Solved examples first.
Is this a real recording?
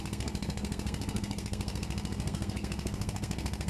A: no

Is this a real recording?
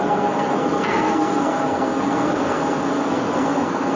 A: no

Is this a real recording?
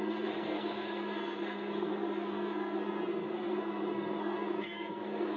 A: no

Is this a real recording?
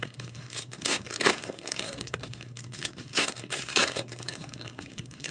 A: no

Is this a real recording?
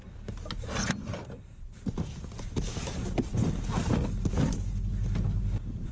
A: yes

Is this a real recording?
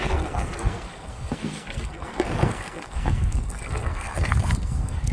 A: no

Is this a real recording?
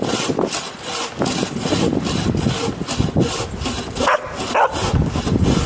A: yes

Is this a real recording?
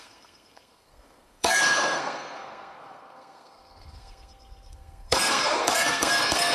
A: no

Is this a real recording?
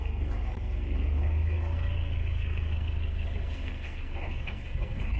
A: no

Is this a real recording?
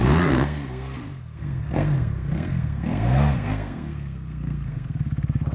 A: no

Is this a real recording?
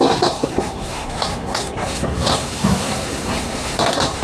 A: no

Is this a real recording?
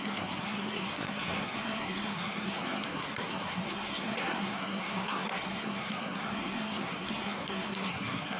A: no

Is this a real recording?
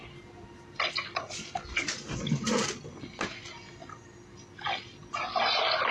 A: yes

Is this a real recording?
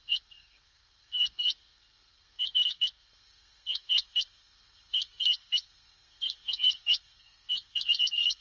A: no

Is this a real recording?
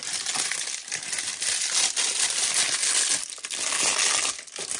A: yes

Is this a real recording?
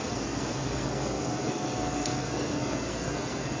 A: no